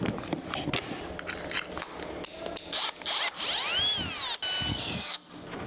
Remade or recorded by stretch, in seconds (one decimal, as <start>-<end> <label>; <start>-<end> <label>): 0.0-4.7 recorded; 4.7-5.3 remade; 5.3-5.7 recorded

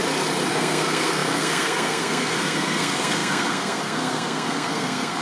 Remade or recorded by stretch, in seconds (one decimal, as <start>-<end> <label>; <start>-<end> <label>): 0.0-0.5 recorded; 0.5-5.2 remade